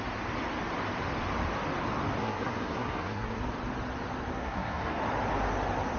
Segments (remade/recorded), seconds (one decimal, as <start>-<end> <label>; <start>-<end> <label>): 0.0-2.2 recorded; 2.2-3.4 remade; 3.4-4.3 recorded; 4.3-5.0 remade; 5.0-6.0 recorded